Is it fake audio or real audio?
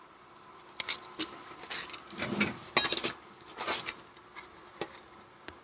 real